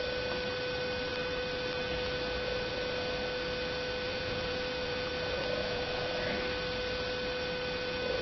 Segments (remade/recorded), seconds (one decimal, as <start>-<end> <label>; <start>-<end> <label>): 0.0-4.1 recorded; 4.1-5.1 remade; 5.1-5.6 recorded; 5.6-6.1 remade; 6.1-8.2 recorded